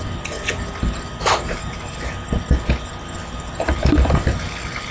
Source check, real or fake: real